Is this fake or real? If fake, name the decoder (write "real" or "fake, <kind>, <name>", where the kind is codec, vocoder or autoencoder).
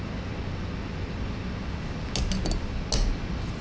real